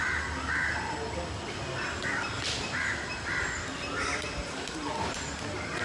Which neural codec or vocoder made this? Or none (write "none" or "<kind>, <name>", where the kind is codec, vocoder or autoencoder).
none